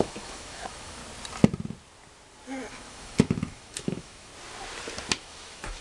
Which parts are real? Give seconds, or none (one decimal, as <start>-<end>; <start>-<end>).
1.0-2.7; 4.3-5.2